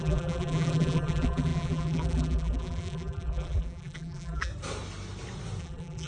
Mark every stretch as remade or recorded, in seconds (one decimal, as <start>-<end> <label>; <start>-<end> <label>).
0.0-4.5 remade; 4.5-5.6 recorded; 5.6-6.1 remade